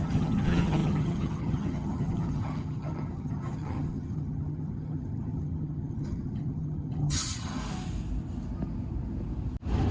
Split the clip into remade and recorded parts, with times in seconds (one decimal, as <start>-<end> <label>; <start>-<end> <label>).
0.0-7.6 remade; 7.6-9.9 recorded